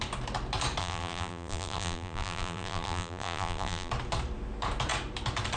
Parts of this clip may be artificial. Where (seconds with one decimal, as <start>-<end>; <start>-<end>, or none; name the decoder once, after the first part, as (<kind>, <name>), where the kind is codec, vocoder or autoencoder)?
0.8-3.9 (vocoder, BigVGAN v2)